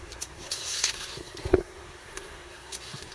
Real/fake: fake